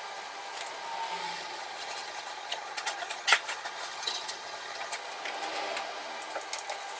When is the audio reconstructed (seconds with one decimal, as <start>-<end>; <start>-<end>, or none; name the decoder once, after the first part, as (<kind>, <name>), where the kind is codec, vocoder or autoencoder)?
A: 1.2-5.0 (vocoder, HiFi-GAN)